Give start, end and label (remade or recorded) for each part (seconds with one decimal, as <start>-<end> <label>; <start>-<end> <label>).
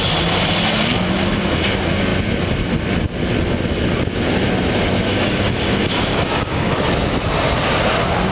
0.0-5.1 recorded; 5.1-6.8 remade; 6.8-8.3 recorded